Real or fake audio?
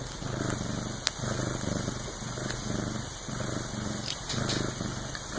real